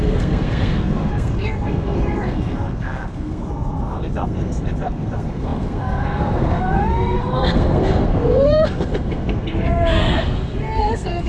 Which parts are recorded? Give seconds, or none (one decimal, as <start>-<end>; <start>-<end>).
none